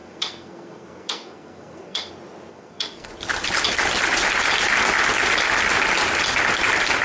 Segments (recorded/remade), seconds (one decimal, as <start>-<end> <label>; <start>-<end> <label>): 0.0-2.1 remade; 2.1-2.5 recorded; 2.5-3.1 remade; 3.1-7.0 recorded